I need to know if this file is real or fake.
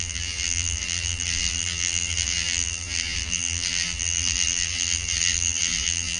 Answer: fake